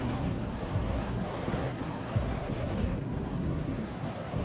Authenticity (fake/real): fake